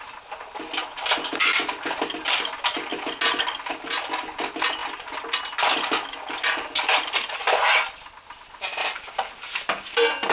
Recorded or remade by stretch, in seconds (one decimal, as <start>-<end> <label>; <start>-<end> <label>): 0.0-10.3 recorded